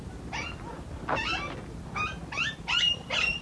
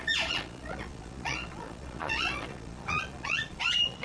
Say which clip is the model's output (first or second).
second